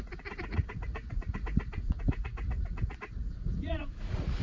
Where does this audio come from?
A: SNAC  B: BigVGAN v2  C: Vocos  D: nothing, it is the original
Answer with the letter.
C